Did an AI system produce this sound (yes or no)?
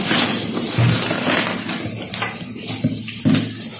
no